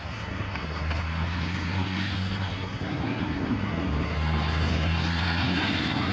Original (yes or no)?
no